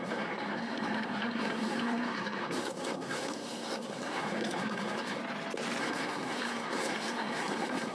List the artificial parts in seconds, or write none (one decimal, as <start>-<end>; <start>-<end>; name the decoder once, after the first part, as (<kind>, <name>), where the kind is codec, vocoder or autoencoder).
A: 0.0-5.2 (codec, SNAC); 5.8-7.9